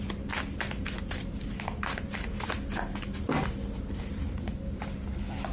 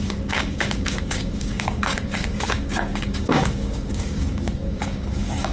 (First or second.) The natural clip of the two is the first